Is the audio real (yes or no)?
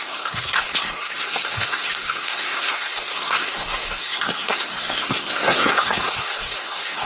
no